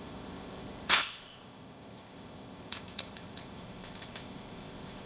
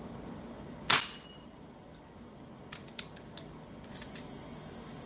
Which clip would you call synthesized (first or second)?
first